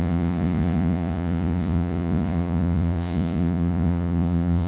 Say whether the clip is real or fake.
fake